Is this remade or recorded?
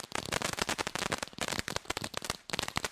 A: recorded